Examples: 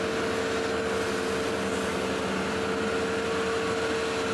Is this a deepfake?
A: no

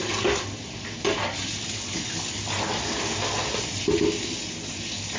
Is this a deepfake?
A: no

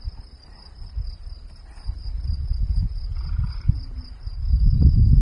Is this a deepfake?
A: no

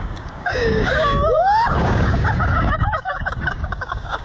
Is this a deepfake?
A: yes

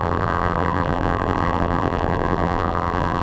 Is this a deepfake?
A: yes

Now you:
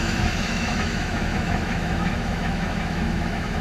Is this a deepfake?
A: yes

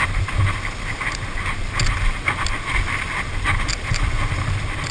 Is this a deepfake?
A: no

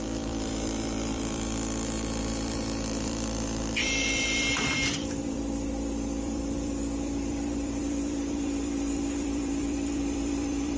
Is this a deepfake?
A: yes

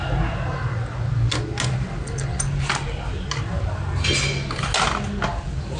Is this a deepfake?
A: no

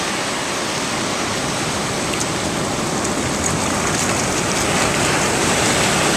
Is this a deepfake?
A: no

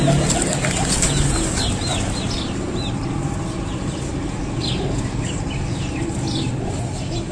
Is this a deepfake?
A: no